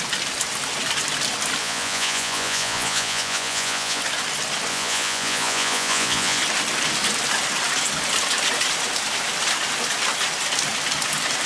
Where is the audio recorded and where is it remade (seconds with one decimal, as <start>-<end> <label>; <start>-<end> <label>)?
0.0-1.6 recorded; 1.6-4.0 remade; 4.0-4.7 recorded; 4.7-6.4 remade; 6.4-11.5 recorded